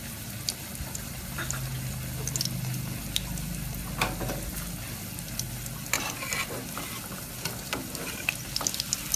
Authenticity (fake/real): real